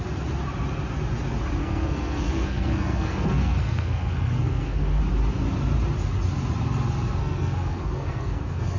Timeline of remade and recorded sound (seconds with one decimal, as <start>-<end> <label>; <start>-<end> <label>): 0.0-1.6 recorded; 1.6-5.0 remade; 5.0-7.2 recorded; 7.2-8.8 remade